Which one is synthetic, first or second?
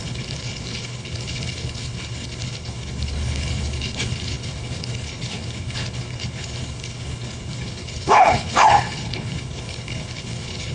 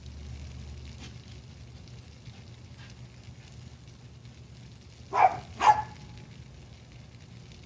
first